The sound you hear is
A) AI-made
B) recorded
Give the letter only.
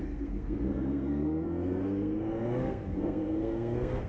A